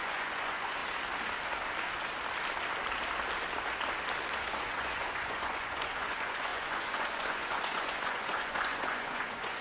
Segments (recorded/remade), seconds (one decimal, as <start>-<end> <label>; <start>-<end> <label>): 0.0-0.8 remade; 0.8-4.4 recorded; 4.4-9.6 remade